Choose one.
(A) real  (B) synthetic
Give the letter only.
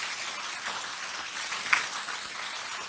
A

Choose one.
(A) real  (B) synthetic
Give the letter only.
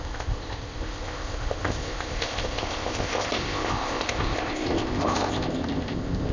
B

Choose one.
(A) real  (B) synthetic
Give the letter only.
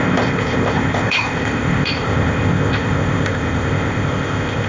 B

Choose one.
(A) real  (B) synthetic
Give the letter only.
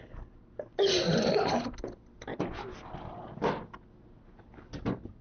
A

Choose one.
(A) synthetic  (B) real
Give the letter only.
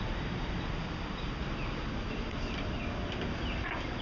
B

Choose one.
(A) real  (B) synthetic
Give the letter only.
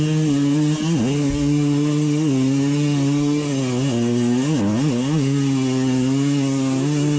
A